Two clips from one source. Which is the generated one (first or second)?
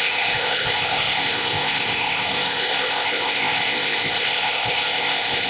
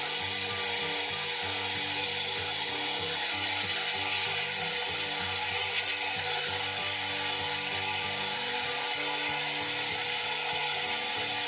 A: first